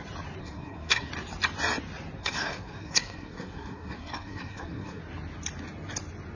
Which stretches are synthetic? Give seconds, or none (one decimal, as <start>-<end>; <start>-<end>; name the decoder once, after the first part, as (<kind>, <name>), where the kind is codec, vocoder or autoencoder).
0.4-1.1 (codec, SNAC); 2.2-5.0